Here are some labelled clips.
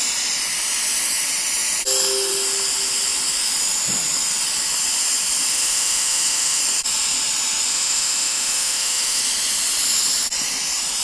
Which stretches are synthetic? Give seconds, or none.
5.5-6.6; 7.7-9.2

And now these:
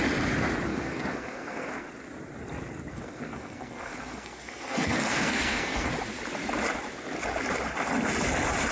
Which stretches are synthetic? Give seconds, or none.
0.7-1.9; 2.9-5.9

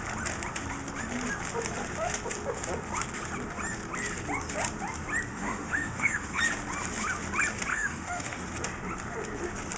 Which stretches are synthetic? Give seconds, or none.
5.3-6.4; 7.7-8.5